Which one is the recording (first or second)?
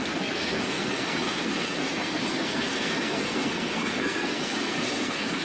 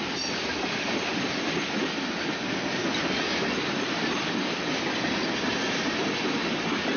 second